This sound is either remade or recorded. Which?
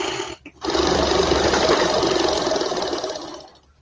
recorded